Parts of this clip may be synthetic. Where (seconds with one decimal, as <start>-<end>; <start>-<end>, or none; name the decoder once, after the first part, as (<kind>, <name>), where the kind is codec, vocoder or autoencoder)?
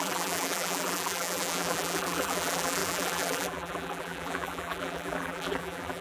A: 0.0-6.0 (vocoder, BigVGAN v2)